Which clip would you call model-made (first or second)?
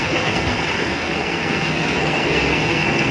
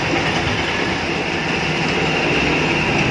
first